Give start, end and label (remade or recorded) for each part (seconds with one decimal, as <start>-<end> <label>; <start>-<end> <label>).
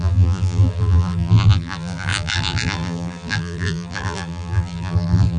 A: 0.0-5.4 remade